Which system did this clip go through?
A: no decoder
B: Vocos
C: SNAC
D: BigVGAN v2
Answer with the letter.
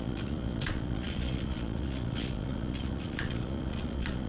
B